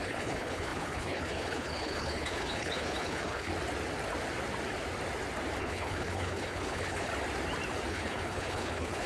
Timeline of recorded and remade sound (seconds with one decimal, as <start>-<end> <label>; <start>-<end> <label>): 0.0-3.5 remade; 3.5-5.6 recorded; 5.6-7.1 remade; 7.1-7.9 recorded; 7.9-9.1 remade